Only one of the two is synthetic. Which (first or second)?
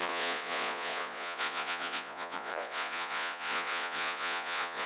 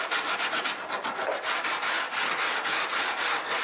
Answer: first